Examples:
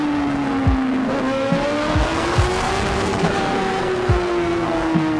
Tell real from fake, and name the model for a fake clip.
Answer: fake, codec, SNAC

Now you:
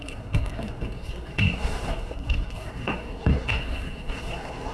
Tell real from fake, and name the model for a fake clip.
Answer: fake, codec, SNAC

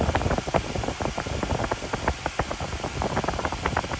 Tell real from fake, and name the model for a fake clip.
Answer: real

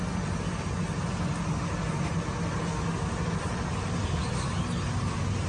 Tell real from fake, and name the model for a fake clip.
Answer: real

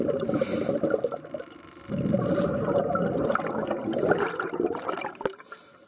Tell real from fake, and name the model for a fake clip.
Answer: real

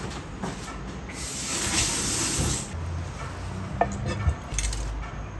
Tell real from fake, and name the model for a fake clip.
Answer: real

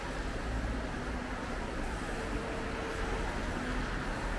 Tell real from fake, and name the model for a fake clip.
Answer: real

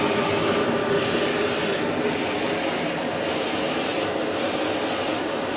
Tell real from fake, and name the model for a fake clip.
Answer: real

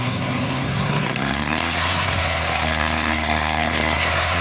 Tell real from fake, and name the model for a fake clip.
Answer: fake, codec, SNAC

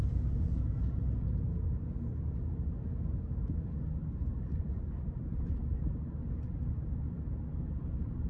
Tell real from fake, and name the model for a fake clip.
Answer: real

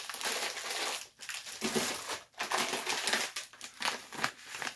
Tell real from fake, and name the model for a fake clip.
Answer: real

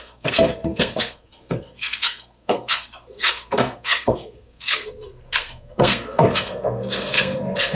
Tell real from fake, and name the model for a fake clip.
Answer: fake, codec, SNAC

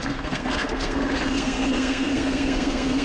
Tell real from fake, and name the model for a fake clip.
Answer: fake, codec, SNAC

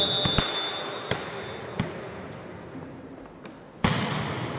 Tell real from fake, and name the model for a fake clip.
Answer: real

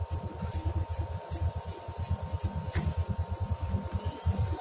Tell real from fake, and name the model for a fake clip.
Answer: real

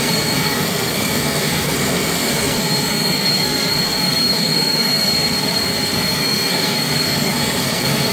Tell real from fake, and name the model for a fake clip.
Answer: fake, codec, SNAC